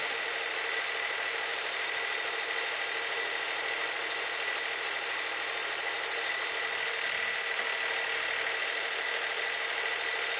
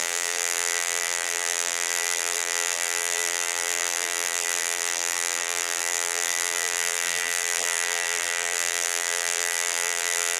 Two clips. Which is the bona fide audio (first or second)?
first